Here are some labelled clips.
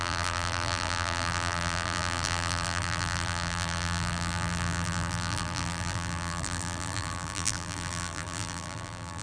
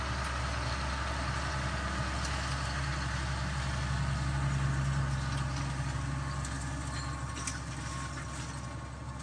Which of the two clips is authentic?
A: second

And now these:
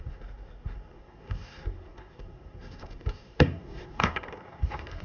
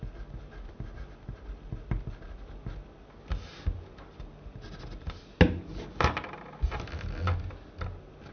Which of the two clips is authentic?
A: second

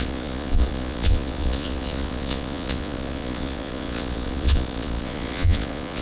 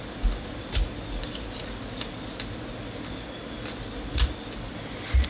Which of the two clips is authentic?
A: second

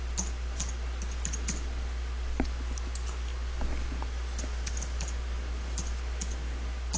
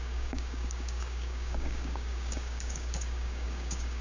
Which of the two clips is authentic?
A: first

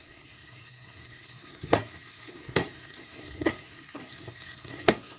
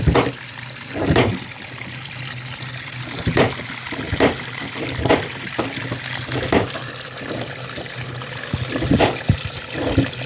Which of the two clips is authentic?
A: second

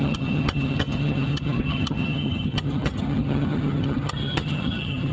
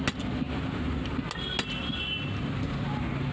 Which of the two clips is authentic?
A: second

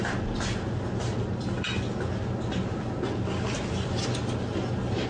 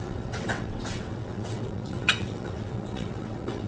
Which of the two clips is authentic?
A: first